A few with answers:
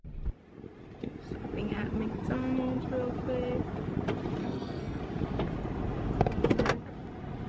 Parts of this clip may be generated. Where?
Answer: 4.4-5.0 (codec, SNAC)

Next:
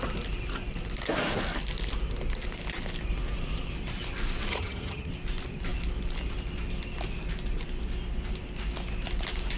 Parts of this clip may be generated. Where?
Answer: 4.5-5.1 (vocoder, HiFi-GAN)